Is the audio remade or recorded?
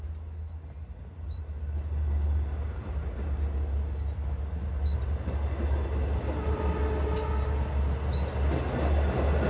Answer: recorded